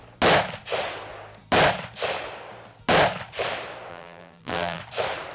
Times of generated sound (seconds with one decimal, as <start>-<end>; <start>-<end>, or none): 3.9-4.8